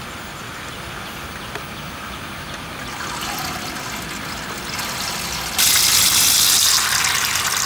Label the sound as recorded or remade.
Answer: recorded